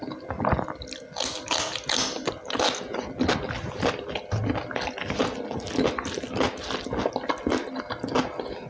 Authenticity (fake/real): real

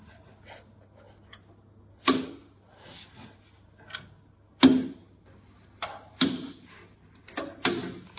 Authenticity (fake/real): real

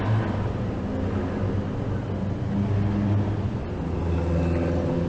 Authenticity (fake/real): real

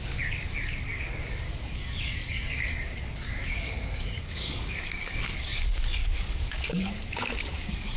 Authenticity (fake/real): fake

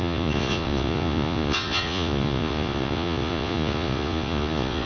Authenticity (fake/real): fake